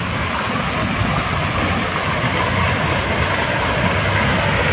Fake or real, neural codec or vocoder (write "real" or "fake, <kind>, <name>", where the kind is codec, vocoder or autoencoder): real